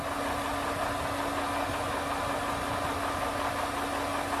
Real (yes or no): yes